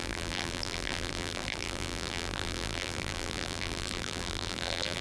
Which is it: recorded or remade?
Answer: remade